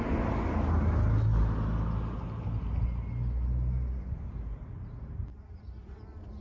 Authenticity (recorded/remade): recorded